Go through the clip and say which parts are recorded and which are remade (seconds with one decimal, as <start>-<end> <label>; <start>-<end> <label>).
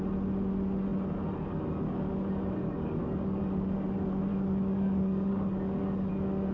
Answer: 0.0-2.6 recorded; 2.6-3.4 remade; 3.4-4.3 recorded; 4.3-6.1 remade; 6.1-6.5 recorded